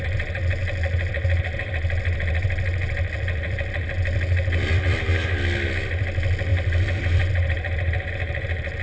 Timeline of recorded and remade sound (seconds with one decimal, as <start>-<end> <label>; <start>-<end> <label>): 0.0-6.5 recorded; 6.5-8.1 remade; 8.1-8.8 recorded